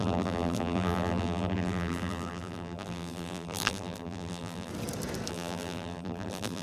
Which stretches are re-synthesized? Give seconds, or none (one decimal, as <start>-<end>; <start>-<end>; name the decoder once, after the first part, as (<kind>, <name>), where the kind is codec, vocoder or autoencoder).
0.0-4.7 (vocoder, BigVGAN v2); 5.3-6.6